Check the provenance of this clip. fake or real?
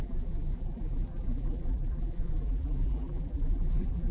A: fake